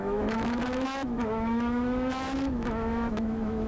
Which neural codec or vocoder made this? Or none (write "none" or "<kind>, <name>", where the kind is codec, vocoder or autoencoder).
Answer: autoencoder, DAC-VAE